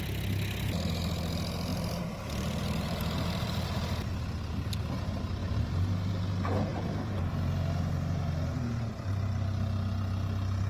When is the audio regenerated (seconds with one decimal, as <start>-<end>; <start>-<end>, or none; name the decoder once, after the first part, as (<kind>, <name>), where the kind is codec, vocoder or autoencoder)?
1.7-3.6 (vocoder, BigVGAN v2); 5.4-6.1; 6.7-9.1